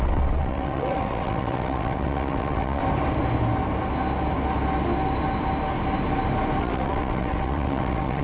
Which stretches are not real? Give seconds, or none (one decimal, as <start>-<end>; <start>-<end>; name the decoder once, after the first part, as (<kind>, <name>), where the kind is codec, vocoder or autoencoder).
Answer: 0.0-2.8 (vocoder, WaveNeXt); 6.6-8.2